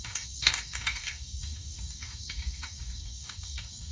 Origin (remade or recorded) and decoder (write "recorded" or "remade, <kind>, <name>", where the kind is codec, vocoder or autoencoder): remade, codec, DAC